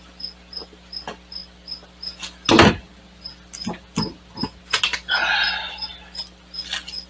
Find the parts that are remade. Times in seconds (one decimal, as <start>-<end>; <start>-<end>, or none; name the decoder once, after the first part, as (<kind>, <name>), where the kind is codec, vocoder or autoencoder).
none